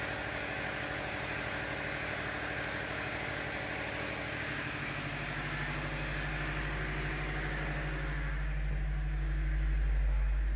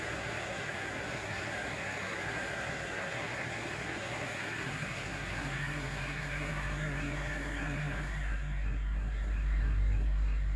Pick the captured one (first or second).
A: first